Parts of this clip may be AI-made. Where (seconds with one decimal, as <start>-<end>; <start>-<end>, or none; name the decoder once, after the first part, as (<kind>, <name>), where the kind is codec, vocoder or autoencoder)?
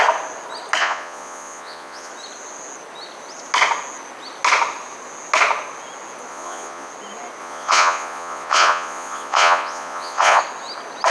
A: 0.8-2.1 (vocoder, Vocos); 6.3-6.9; 7.4-10.4